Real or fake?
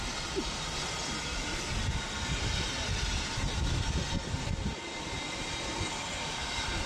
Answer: real